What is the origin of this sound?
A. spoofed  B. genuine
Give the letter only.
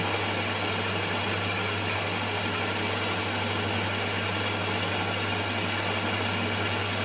B